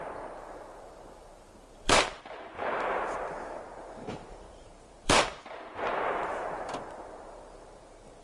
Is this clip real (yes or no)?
no